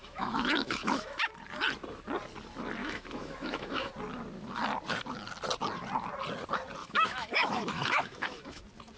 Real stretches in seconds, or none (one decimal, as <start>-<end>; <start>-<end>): 1.3-2.8; 3.9-6.8; 8.6-9.0